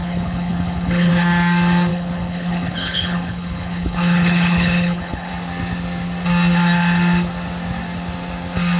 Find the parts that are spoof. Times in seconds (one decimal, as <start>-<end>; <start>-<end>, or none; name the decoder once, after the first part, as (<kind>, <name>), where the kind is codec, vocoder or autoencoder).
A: 0.0-1.1 (codec, HILCodec); 1.9-5.3